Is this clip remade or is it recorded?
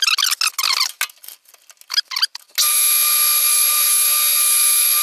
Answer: recorded